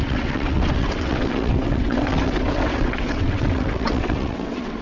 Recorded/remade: remade